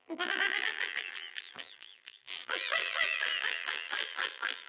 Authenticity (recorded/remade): remade